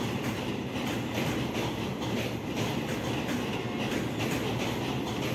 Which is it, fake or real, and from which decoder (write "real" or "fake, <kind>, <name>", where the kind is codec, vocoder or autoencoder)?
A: real